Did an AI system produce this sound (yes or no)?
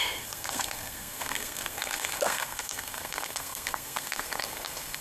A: yes